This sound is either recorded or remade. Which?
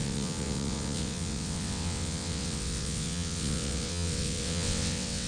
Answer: remade